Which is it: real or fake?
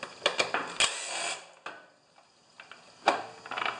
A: real